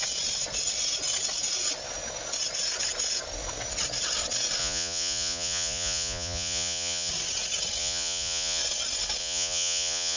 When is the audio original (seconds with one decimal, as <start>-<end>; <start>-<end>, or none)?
0.0-4.6; 7.1-7.8; 8.6-9.2